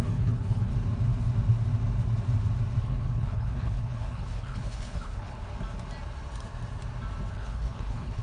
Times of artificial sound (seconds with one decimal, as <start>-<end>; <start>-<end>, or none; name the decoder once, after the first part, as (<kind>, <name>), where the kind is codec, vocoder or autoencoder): 0.0-0.7 (codec, HILCodec); 2.8-5.5; 7.3-8.2